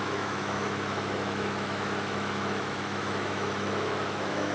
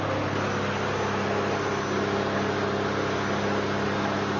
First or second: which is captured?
second